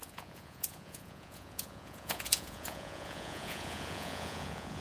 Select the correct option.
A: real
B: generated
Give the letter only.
B